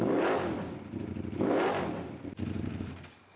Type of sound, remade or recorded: recorded